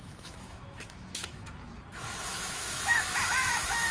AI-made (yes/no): yes